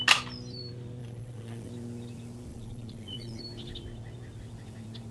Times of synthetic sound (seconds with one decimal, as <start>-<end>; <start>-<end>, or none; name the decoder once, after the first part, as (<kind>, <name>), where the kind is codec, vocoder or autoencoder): 1.0-1.7 (vocoder, Vocos); 2.5-3.4